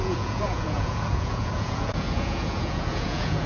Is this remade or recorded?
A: remade